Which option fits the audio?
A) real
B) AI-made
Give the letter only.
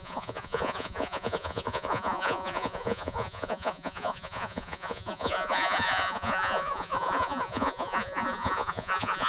B